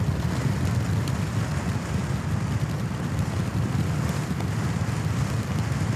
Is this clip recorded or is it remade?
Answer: recorded